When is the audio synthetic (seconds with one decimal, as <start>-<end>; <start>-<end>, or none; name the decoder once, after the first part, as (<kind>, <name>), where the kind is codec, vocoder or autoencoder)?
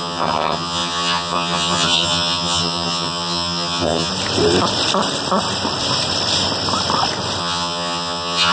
0.0-4.1 (vocoder, HiFi-GAN); 7.4-8.5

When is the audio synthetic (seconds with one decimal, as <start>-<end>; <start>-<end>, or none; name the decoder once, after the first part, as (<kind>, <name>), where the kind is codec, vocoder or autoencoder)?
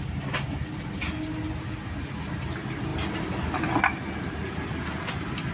none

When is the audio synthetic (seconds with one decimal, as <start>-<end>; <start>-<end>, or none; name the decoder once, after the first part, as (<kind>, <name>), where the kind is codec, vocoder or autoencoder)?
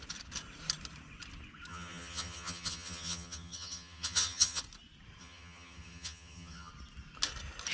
1.7-4.6 (vocoder, HiFi-GAN); 5.2-6.7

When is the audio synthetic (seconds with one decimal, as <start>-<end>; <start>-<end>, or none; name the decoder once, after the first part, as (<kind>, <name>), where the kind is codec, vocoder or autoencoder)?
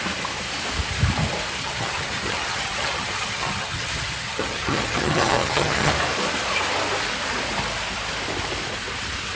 1.6-5.9 (vocoder, HiFi-GAN)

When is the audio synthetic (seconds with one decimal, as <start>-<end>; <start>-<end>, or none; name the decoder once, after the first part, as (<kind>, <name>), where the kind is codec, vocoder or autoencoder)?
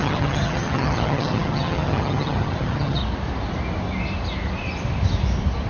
0.0-3.0 (vocoder, HiFi-GAN)